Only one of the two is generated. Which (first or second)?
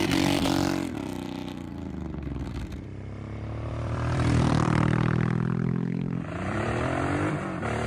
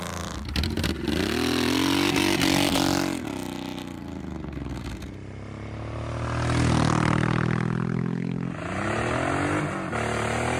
first